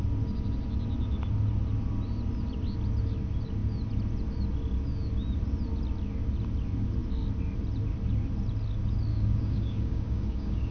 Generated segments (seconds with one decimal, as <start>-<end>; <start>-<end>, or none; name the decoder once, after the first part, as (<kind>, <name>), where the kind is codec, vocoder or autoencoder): 9.1-10.7 (codec, DAC)